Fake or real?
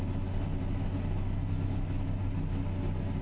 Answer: real